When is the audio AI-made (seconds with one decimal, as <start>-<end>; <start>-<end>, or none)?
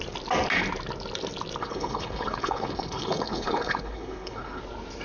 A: 1.6-4.6